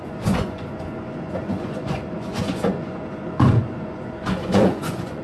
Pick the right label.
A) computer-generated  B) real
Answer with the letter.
A